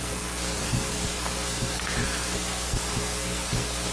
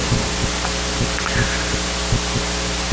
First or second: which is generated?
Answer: first